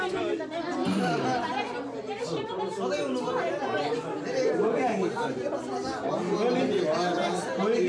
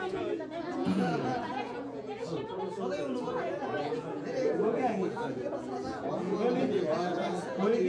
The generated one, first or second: second